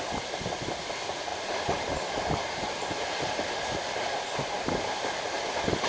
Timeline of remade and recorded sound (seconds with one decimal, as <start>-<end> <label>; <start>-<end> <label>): 0.0-5.9 recorded